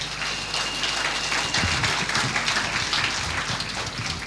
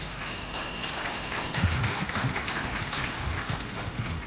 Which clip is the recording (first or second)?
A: first